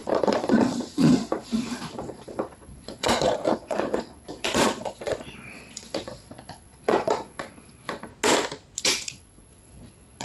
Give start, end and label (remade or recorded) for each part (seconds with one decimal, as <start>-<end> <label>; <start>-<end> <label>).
0.0-8.1 remade; 8.1-8.8 recorded; 8.8-10.2 remade